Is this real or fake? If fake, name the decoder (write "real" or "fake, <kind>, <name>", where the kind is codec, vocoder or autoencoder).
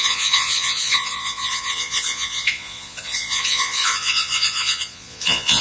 fake, vocoder, Vocos